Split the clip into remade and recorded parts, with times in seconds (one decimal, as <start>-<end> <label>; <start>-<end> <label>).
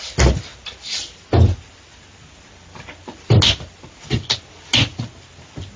0.0-5.8 recorded